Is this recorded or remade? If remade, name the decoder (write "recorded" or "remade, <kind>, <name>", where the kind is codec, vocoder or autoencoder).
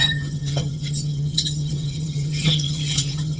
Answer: remade, vocoder, HiFi-GAN